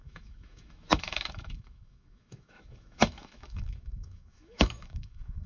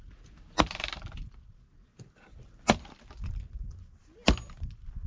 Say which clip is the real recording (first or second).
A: second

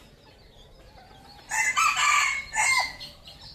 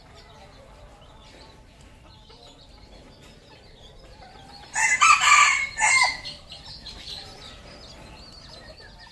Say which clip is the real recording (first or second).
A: first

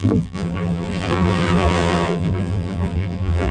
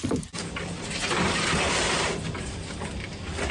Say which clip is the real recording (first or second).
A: second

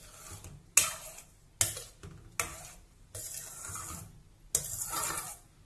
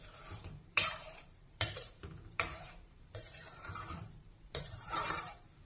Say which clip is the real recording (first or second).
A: first